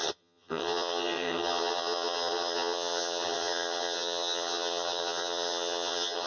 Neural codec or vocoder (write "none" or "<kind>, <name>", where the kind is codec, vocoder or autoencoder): vocoder, HiFi-GAN